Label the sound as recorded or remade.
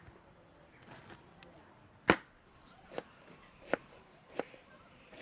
recorded